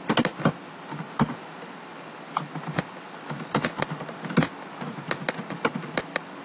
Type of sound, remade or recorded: recorded